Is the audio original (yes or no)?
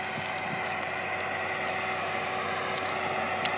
yes